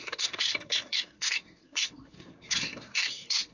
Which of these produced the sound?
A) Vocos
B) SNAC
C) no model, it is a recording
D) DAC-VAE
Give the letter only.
B